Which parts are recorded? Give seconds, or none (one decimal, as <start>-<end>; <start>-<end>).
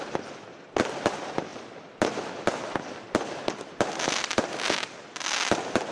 0.0-5.9